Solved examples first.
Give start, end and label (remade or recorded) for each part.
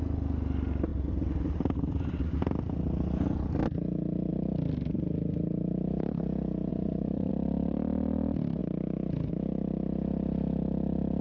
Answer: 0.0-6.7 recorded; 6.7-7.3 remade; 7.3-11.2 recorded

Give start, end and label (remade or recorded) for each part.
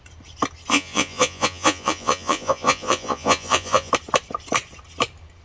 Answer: 0.0-0.7 recorded; 0.7-3.9 remade; 3.9-5.4 recorded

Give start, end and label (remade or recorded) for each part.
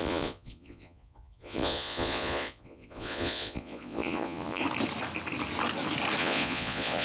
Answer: 0.0-4.6 remade; 4.6-6.2 recorded; 6.2-7.0 remade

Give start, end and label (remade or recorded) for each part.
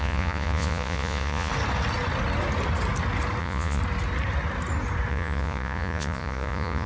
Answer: 0.0-1.5 remade; 1.5-3.4 recorded; 3.4-3.8 remade; 3.8-5.1 recorded; 5.1-6.9 remade